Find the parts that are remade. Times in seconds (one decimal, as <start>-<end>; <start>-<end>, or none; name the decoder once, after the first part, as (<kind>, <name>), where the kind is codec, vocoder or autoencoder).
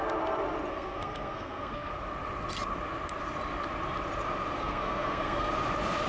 0.7-1.9 (codec, SNAC); 4.6-5.5